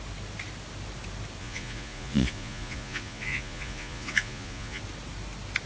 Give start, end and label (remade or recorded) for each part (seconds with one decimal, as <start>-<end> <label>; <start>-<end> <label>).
0.0-1.4 recorded; 1.4-4.8 remade; 4.8-5.7 recorded